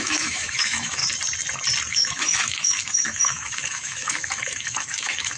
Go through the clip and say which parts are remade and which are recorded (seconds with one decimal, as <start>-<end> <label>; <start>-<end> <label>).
0.0-1.0 remade; 1.0-1.9 recorded; 1.9-5.4 remade